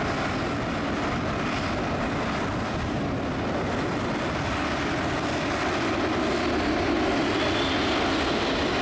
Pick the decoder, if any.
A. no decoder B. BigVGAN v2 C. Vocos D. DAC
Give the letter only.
A